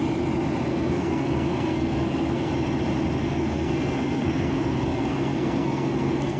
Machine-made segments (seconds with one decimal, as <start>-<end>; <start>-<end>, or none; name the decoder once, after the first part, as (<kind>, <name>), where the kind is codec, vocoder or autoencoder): 0.7-2.5 (codec, SNAC); 3.2-6.4